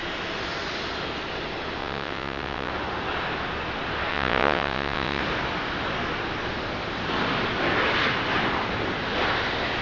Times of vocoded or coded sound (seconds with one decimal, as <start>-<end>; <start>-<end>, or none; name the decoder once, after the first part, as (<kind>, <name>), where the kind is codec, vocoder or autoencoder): 1.8-2.7 (vocoder, WaveNeXt); 4.1-5.2